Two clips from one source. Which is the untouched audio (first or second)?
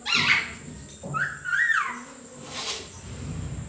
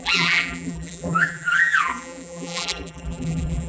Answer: first